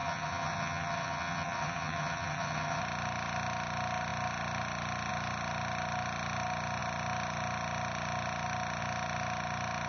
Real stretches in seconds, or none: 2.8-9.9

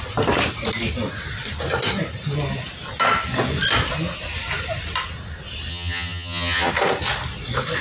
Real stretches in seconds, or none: 0.0-5.7; 6.7-7.8